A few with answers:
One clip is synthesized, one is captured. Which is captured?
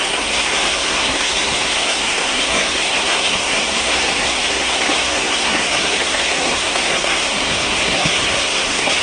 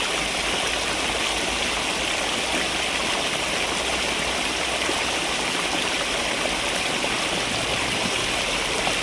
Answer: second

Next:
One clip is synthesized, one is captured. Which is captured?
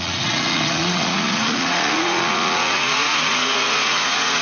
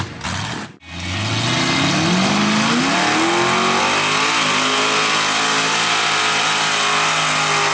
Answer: second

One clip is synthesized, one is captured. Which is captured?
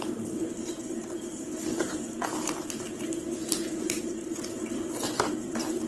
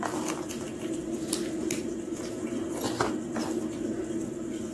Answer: second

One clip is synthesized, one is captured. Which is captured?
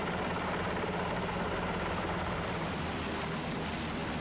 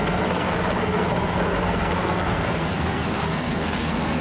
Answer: first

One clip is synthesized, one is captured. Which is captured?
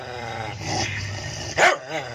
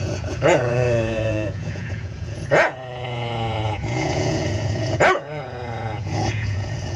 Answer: first